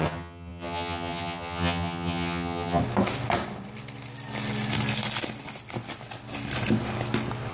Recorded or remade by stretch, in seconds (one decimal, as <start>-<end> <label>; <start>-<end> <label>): 0.0-2.8 remade; 2.8-7.5 recorded